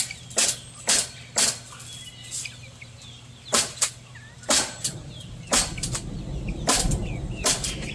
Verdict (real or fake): real